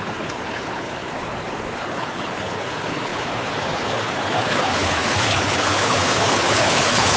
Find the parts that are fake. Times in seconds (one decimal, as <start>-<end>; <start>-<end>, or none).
0.0-7.2